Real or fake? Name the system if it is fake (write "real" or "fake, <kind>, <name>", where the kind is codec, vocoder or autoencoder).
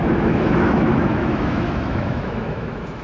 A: fake, autoencoder, DAC-VAE